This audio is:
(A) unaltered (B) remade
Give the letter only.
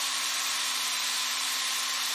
B